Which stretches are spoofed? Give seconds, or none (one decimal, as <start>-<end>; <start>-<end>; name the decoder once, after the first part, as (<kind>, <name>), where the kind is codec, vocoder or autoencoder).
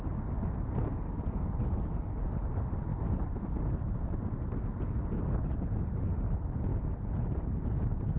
2.9-3.5 (vocoder, BigVGAN v2)